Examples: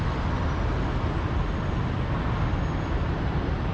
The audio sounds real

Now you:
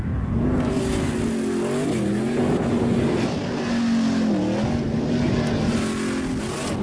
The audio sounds real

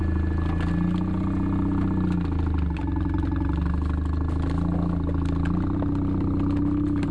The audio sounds real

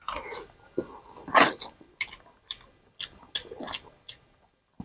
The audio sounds real